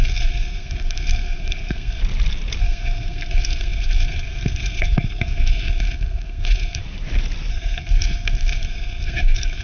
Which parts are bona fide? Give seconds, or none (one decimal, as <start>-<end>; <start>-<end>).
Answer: 2.0-2.6; 6.8-7.5